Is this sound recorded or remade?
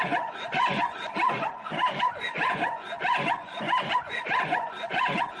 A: remade